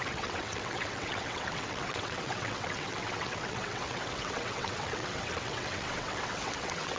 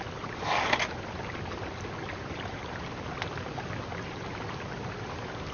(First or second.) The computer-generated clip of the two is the first